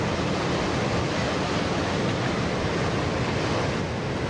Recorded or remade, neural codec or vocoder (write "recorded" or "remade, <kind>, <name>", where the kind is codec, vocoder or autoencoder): recorded